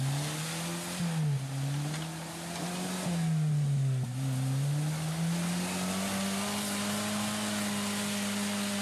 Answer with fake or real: real